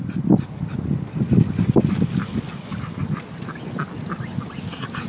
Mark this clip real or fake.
real